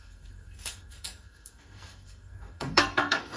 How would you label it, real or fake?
fake